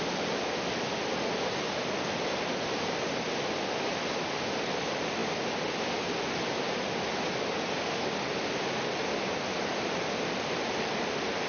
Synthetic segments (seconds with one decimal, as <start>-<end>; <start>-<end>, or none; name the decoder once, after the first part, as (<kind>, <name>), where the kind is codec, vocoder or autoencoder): none